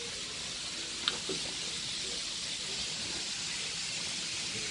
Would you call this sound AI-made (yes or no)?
no